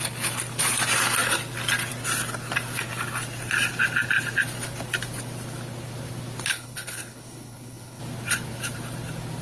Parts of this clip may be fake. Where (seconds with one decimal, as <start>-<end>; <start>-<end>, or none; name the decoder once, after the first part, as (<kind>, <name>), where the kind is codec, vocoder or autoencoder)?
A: 6.5-8.0 (codec, HILCodec)